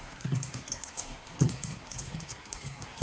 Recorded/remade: remade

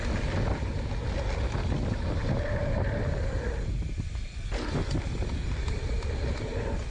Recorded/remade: recorded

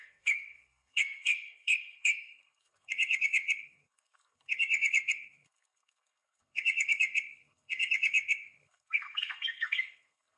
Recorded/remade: remade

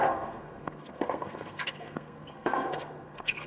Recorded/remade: remade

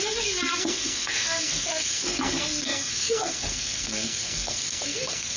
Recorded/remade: remade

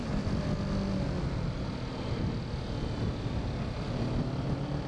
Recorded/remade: recorded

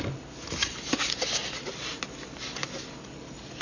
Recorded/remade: recorded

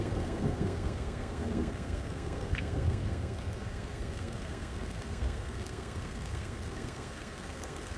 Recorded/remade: remade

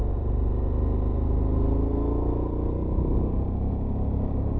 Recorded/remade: recorded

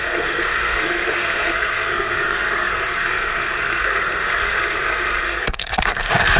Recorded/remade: remade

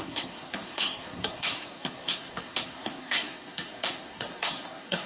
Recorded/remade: remade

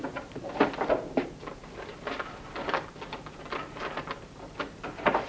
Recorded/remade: recorded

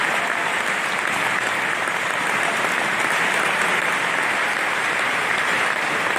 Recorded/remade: recorded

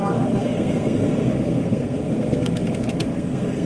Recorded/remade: remade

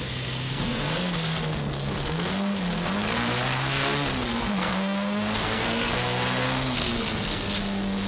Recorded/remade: remade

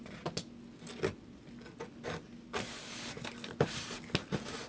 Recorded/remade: recorded